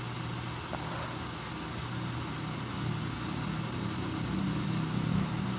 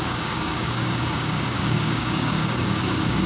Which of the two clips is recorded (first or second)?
first